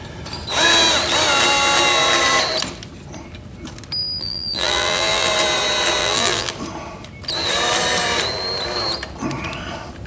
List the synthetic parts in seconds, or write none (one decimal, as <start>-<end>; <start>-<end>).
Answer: 4.0-5.3; 6.0-6.5